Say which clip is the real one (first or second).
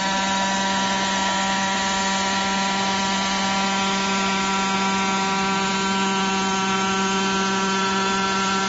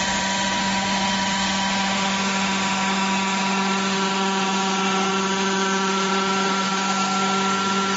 first